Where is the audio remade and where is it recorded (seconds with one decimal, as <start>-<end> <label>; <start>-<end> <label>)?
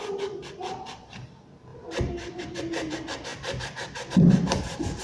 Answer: 0.0-0.4 recorded; 0.4-1.0 remade; 1.0-1.7 recorded; 1.7-2.6 remade; 2.6-3.3 recorded; 3.3-5.0 remade